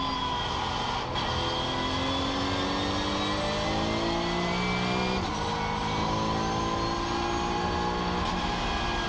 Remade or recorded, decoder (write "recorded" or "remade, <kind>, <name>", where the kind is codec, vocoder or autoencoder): recorded